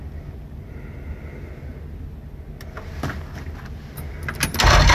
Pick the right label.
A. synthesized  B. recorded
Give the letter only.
B